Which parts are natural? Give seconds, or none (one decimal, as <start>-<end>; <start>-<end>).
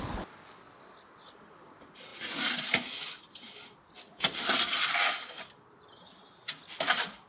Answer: 0.0-7.3